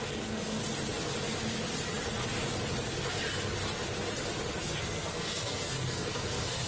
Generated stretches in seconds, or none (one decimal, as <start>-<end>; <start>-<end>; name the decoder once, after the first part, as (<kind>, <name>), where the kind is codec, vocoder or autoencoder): 0.0-0.6 (codec, SNAC); 4.6-6.7